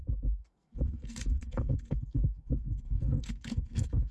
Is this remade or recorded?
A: remade